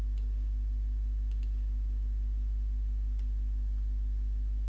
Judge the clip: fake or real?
real